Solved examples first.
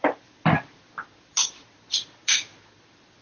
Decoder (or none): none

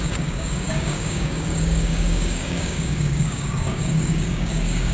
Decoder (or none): codec, DAC